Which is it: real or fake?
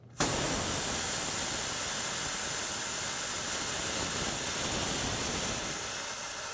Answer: real